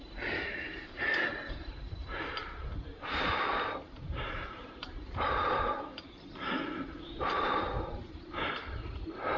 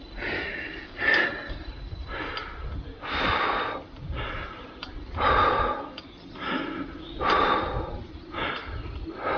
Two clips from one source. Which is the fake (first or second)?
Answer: first